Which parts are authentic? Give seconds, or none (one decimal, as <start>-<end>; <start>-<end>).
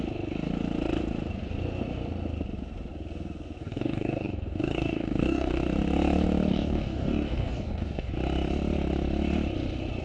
0.0-3.6; 5.6-6.5; 8.1-10.0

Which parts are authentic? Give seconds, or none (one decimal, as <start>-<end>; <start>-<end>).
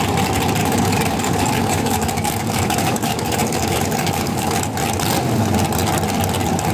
0.0-0.6; 4.6-6.7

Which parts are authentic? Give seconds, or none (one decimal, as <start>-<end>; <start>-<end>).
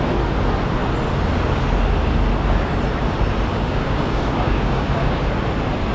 0.0-3.5; 5.2-5.9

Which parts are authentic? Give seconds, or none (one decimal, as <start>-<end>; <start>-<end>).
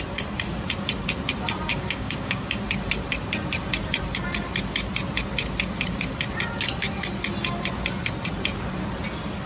0.0-1.7; 2.6-9.5